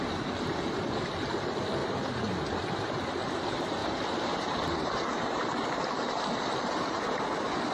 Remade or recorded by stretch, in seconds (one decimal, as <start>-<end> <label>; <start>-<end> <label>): 0.0-1.8 recorded; 1.8-2.3 remade; 2.3-3.8 recorded; 3.8-7.2 remade; 7.2-7.7 recorded